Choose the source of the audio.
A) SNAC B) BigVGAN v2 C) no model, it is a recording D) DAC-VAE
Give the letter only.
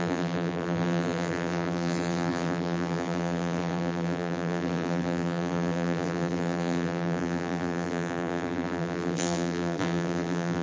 B